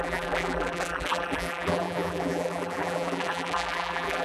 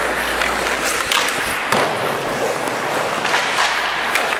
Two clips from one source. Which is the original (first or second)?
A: second